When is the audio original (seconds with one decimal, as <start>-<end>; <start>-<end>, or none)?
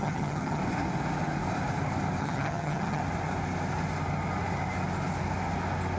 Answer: 0.6-2.2; 3.0-6.0